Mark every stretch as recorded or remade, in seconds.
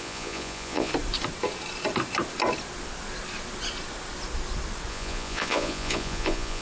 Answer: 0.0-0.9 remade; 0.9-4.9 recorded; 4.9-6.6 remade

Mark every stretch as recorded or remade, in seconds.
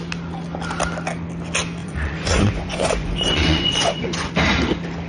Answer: 0.0-1.8 recorded; 1.8-4.3 remade; 4.3-5.1 recorded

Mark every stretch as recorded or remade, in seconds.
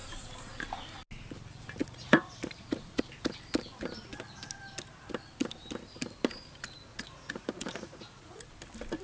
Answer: 0.0-1.8 recorded; 1.8-3.0 remade; 3.0-6.9 recorded; 6.9-8.4 remade; 8.4-9.0 recorded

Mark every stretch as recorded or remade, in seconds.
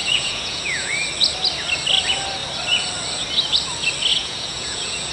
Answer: 0.0-0.9 remade; 0.9-4.1 recorded; 4.1-5.1 remade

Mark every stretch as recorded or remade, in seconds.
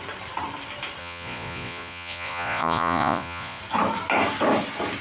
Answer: 0.0-1.0 recorded; 1.0-3.6 remade; 3.6-5.0 recorded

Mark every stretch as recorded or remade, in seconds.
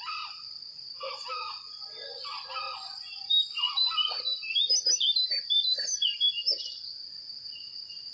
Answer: 0.0-8.1 recorded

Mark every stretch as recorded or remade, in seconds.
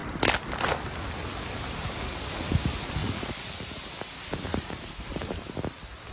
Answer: 0.0-3.0 recorded; 3.0-3.5 remade; 3.5-4.5 recorded; 4.5-5.2 remade; 5.2-6.1 recorded